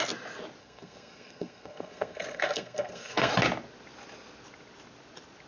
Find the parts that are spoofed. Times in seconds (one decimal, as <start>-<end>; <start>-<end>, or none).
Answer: 0.6-3.3